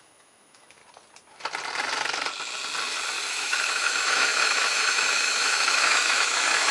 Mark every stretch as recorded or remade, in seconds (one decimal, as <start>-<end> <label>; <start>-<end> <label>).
0.0-0.8 remade; 0.8-3.3 recorded; 3.3-6.7 remade